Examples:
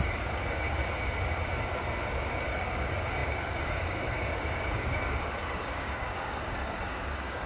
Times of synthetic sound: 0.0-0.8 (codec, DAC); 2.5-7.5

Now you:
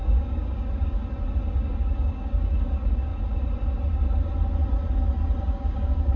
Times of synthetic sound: 0.0-1.0 (codec, DAC); 1.6-3.1; 5.4-6.2

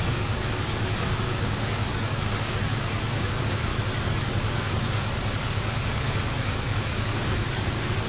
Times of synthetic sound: 0.0-3.7 (codec, DAC); 4.2-8.1

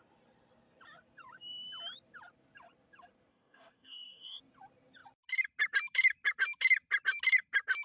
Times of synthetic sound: 3.3-4.4 (codec, DAC)